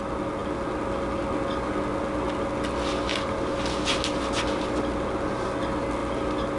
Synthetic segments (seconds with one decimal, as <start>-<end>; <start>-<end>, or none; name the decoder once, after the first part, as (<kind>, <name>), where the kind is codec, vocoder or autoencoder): none